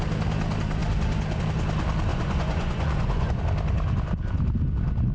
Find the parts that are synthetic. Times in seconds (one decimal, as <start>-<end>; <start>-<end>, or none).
2.1-3.4